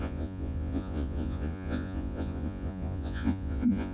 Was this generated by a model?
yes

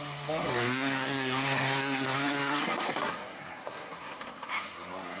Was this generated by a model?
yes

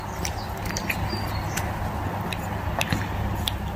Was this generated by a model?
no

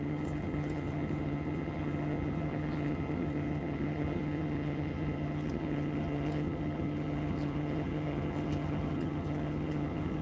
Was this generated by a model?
yes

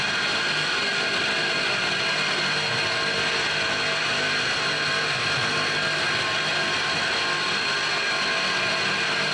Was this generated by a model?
no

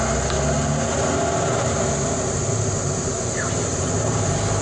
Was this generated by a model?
no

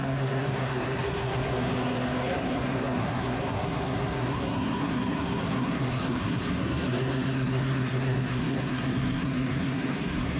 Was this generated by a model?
yes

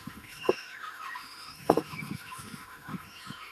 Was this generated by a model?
yes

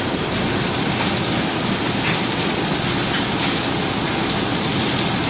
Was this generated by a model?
no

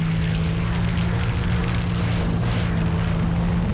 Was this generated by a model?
no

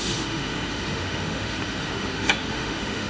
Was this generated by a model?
yes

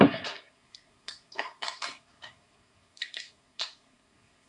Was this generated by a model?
yes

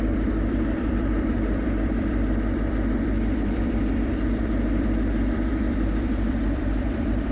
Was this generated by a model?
yes